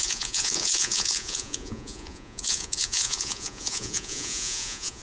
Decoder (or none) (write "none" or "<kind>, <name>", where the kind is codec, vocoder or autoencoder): vocoder, Vocos